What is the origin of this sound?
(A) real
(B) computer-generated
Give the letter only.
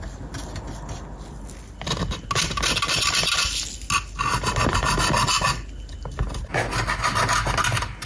A